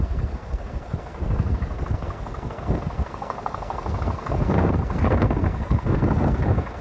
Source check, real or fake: fake